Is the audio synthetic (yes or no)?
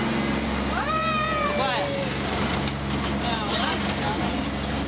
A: no